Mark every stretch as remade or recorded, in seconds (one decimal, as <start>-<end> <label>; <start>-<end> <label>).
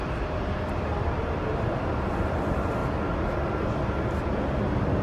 0.0-0.9 recorded; 0.9-1.4 remade; 1.4-5.0 recorded